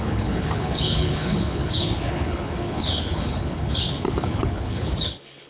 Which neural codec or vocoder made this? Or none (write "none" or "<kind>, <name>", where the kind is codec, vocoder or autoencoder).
codec, HILCodec